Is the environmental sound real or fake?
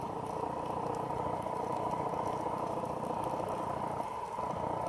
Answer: real